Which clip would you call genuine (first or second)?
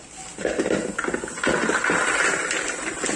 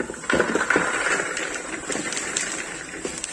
first